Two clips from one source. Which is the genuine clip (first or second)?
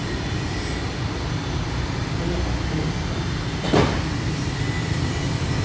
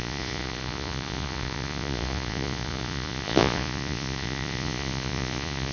first